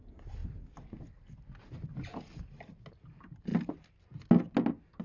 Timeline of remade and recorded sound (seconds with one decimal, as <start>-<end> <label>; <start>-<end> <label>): 0.0-3.5 recorded; 3.5-4.1 remade; 4.1-5.0 recorded